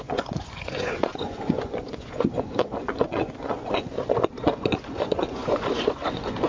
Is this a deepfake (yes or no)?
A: yes